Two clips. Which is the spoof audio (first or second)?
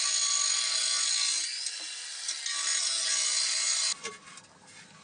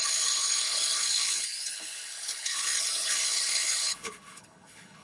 second